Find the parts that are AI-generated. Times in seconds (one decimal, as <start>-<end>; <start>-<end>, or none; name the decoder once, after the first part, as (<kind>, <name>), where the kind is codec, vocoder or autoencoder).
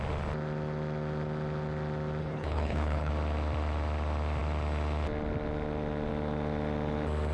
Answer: 2.2-3.1 (codec, HILCodec)